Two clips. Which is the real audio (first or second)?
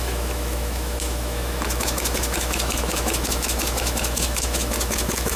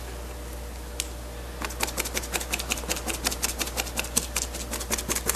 second